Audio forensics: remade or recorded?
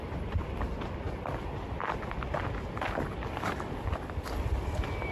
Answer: remade